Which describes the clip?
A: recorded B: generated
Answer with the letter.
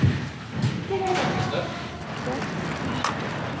A